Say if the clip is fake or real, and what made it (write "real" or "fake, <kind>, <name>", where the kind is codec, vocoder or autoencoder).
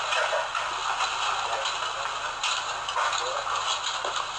real